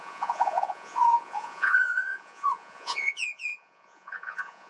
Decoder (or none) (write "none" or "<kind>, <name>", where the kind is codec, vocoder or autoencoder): vocoder, Vocos